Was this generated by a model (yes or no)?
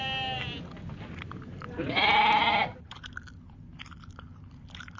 no